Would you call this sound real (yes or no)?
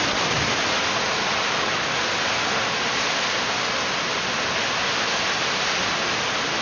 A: yes